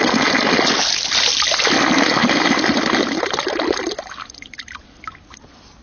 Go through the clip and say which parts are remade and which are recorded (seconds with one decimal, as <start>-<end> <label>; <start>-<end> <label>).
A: 0.0-5.8 recorded